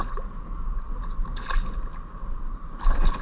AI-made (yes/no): no